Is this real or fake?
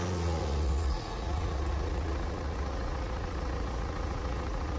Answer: fake